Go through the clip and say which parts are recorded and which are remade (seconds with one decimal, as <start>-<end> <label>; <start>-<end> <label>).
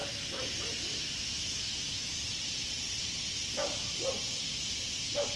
0.0-1.2 recorded; 1.2-2.1 remade; 2.1-5.4 recorded